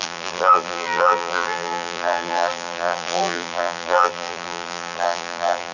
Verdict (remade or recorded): remade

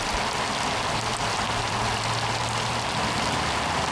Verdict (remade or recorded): recorded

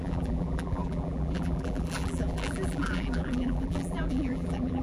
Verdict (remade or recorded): remade